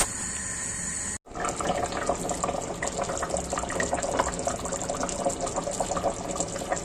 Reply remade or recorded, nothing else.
recorded